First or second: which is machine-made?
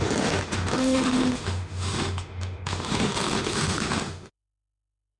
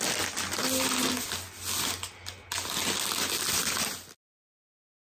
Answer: first